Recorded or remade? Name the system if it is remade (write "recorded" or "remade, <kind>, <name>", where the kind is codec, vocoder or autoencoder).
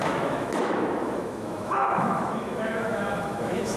remade, autoencoder, DAC-VAE